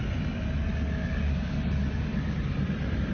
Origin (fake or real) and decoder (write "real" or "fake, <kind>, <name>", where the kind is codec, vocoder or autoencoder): real